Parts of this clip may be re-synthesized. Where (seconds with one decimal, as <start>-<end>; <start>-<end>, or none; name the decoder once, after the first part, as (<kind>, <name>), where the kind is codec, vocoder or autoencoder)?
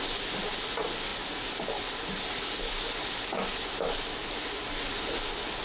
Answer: 1.1-2.6 (vocoder, BigVGAN v2); 4.2-5.6